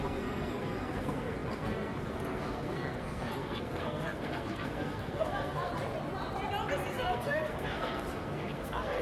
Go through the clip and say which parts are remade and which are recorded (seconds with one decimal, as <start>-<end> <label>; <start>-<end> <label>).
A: 0.0-5.7 remade; 5.7-6.9 recorded; 6.9-9.0 remade